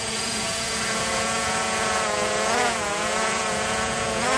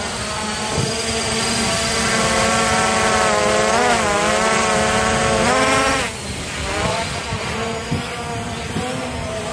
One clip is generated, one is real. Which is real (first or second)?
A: second